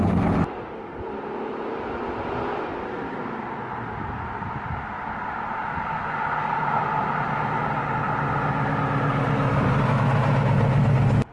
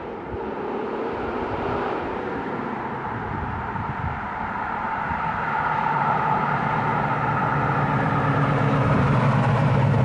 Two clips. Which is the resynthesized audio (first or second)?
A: second